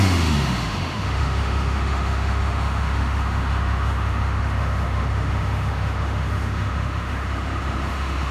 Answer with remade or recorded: remade